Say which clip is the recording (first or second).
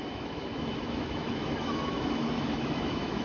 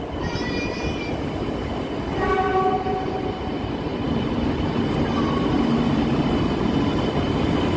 second